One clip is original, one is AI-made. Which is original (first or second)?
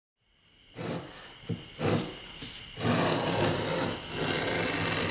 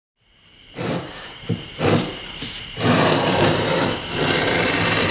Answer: first